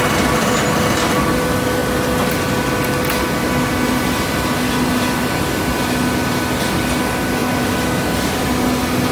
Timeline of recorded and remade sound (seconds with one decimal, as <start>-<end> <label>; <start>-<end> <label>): 0.0-9.1 recorded